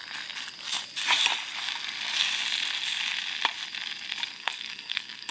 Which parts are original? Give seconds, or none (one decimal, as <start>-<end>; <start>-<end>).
0.0-4.3